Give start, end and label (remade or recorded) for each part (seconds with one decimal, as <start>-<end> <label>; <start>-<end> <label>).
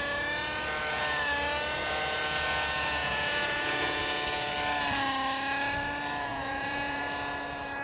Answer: 0.0-3.0 recorded; 3.0-4.0 remade; 4.0-6.3 recorded; 6.3-7.0 remade; 7.0-7.8 recorded